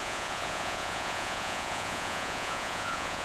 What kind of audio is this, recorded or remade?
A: remade